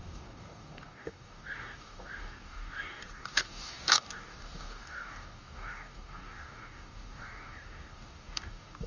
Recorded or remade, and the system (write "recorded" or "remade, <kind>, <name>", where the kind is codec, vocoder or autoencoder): remade, codec, DAC